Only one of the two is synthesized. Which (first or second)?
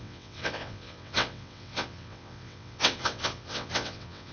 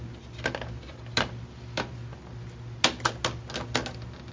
first